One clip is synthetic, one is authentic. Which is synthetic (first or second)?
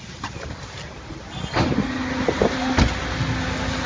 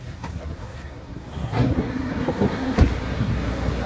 second